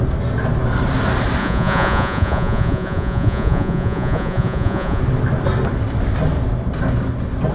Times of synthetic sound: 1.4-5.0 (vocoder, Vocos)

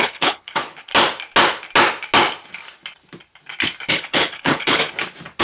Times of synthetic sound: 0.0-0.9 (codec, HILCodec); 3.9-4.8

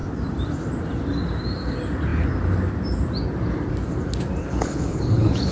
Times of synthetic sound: 4.4-5.5 (codec, HILCodec)

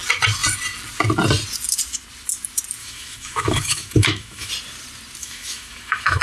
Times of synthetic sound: 2.8-4.5 (autoencoder, DAC-VAE); 5.2-6.2

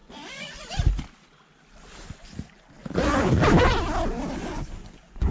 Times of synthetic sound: 0.0-0.7 (vocoder, Vocos); 2.8-3.3; 4.4-5.3

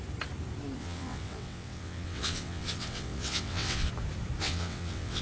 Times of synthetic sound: 0.8-3.9 (vocoder, WaveNeXt); 4.4-5.2

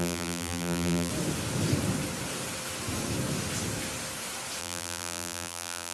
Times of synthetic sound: 0.0-1.1 (vocoder, BigVGAN v2); 4.6-5.9